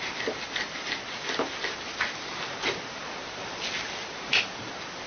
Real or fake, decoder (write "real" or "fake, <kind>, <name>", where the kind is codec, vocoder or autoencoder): real